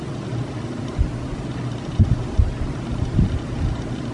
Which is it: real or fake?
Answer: real